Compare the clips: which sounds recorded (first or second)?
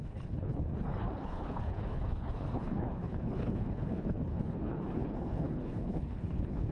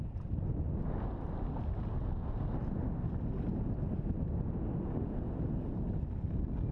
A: second